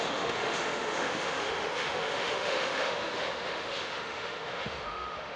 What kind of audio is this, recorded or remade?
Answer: remade